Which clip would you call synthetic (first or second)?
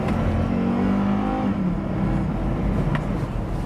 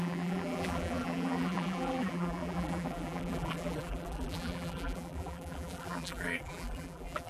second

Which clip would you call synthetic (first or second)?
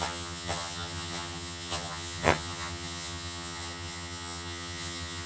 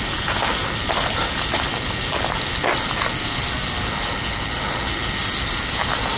first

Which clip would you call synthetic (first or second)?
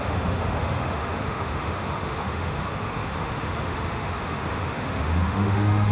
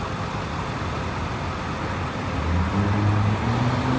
first